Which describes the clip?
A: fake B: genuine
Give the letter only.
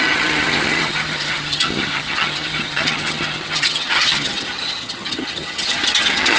A